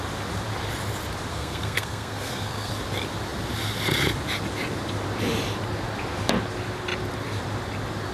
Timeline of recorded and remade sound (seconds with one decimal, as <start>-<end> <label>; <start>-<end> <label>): 0.0-1.3 recorded; 1.3-2.7 remade; 2.7-8.1 recorded